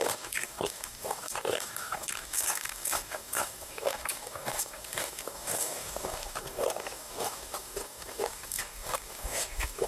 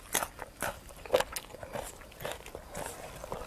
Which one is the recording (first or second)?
second